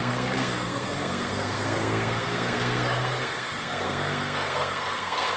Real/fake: fake